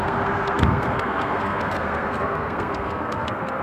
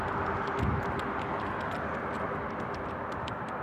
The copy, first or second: first